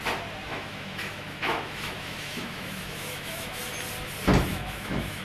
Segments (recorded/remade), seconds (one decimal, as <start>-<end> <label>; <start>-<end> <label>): 0.0-0.5 recorded; 0.5-3.6 remade; 3.6-4.5 recorded; 4.5-5.2 remade